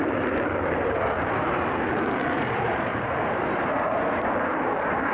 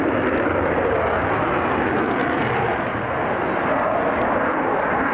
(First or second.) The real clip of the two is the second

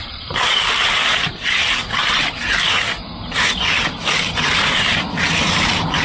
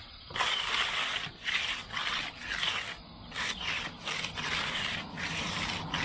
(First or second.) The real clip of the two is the second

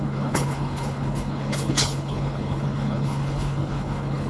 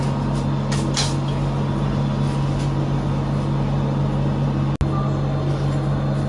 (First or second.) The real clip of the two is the second